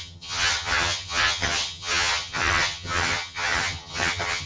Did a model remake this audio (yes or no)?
yes